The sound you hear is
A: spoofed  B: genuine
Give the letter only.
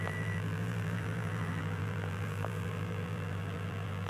A